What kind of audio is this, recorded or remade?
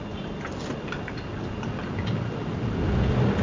recorded